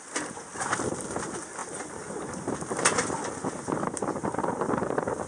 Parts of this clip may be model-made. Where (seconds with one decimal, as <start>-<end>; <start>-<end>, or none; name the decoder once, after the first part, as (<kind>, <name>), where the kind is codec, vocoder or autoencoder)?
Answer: none